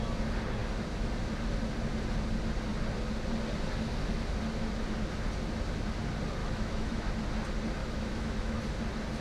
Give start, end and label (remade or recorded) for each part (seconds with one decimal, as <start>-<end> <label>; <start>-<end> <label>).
0.0-6.4 recorded; 6.4-7.1 remade; 7.1-7.8 recorded; 7.8-8.6 remade; 8.6-9.2 recorded

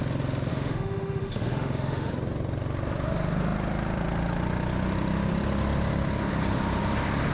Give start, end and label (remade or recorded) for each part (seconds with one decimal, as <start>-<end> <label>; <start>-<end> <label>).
0.0-0.5 recorded; 0.5-2.1 remade; 2.1-7.3 recorded

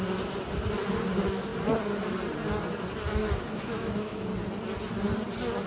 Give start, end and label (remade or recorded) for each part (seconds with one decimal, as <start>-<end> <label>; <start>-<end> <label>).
0.0-3.2 recorded; 3.2-4.3 remade; 4.3-5.7 recorded